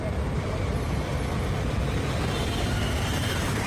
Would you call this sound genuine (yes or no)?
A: no